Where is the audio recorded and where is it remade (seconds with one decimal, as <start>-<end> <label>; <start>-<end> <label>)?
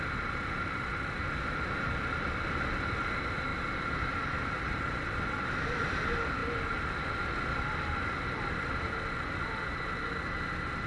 0.0-10.9 recorded